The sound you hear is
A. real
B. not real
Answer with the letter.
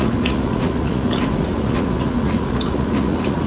B